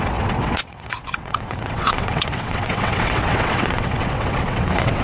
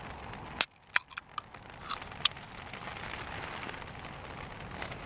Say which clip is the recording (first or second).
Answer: second